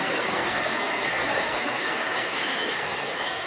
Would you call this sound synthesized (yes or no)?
yes